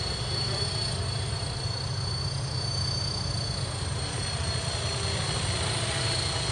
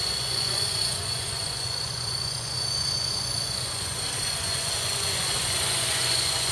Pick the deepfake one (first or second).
second